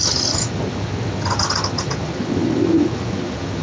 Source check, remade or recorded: remade